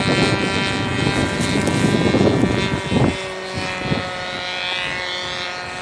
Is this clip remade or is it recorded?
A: recorded